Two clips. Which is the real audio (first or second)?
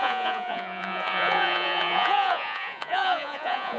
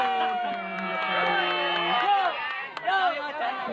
second